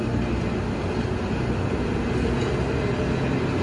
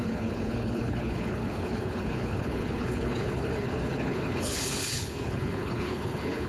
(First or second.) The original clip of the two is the first